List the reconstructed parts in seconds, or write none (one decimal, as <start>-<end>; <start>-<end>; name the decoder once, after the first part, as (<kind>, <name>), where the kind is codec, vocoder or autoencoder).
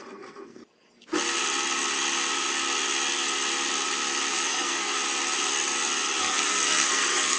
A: 0.0-0.6 (codec, SNAC); 4.3-5.0; 6.2-7.4